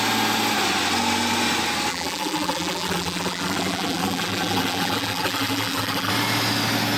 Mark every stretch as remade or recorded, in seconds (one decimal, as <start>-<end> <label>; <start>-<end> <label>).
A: 0.0-1.9 recorded; 1.9-6.1 remade; 6.1-7.0 recorded